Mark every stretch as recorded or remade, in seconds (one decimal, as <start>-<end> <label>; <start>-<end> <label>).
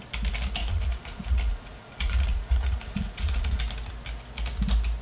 0.0-0.6 recorded; 0.6-3.6 remade; 3.6-5.0 recorded